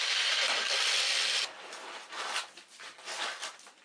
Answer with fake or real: fake